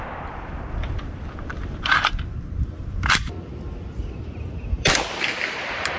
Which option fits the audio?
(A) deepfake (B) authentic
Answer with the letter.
A